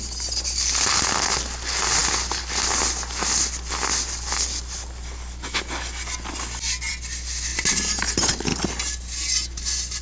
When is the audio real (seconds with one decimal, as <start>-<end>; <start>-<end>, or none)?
0.0-10.0